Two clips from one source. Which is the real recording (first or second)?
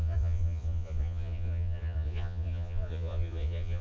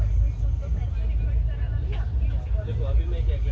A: second